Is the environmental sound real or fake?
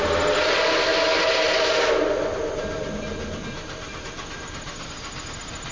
real